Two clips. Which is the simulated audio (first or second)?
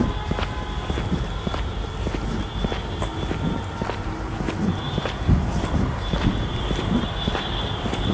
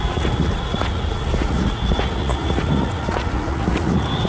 second